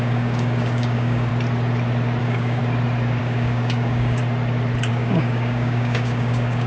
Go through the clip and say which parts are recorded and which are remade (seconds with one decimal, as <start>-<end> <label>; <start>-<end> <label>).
0.0-1.3 remade; 1.3-2.2 recorded; 2.2-2.6 remade; 2.6-3.2 recorded; 3.2-4.2 remade; 4.2-4.9 recorded; 4.9-6.7 remade